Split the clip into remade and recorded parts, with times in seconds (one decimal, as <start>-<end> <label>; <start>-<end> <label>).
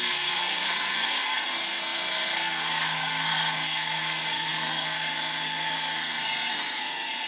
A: 0.0-7.3 remade